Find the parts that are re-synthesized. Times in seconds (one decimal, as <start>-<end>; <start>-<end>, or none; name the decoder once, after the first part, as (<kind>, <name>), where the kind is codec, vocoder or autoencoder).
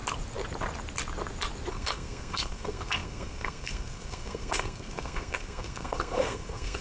1.7-6.8 (codec, SNAC)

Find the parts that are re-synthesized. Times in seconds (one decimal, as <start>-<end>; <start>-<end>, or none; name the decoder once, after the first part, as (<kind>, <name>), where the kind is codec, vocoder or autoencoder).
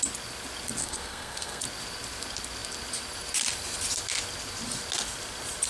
0.8-1.6 (codec, SNAC)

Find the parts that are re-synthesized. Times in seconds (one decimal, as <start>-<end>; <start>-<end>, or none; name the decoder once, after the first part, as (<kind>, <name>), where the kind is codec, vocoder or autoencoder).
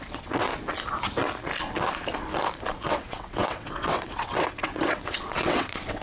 0.0-0.5 (vocoder, WaveNeXt); 2.9-6.0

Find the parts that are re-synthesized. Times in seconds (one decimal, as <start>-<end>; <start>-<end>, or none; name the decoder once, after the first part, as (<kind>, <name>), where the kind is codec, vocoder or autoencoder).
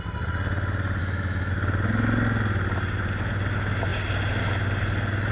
1.0-1.5 (autoencoder, DAC-VAE)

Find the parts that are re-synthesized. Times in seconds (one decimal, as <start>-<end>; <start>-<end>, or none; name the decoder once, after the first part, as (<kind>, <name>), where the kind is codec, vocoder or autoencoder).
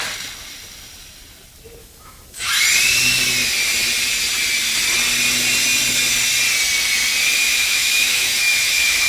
1.8-2.5 (autoencoder, DAC-VAE); 7.4-9.1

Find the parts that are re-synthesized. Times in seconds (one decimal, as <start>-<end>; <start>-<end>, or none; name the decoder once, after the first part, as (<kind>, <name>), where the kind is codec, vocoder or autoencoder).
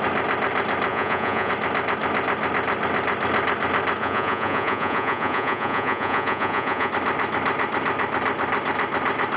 0.9-1.5 (vocoder, Vocos); 4.0-6.9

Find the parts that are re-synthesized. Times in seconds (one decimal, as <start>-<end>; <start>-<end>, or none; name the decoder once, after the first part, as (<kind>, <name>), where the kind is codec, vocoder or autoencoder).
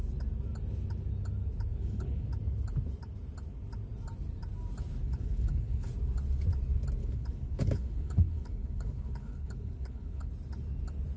1.7-2.3 (codec, HILCodec); 5.0-5.9; 7.0-10.3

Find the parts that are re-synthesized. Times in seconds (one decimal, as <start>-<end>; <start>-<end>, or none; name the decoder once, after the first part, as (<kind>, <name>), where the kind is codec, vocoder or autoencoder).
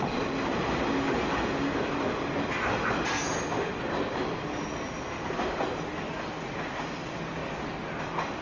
none